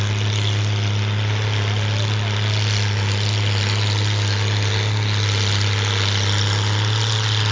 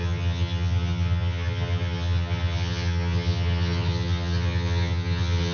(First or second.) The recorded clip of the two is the first